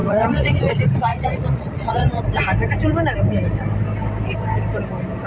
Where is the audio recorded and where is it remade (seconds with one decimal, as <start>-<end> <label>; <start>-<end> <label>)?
0.0-0.7 remade; 0.7-1.1 recorded; 1.1-2.2 remade; 2.2-5.3 recorded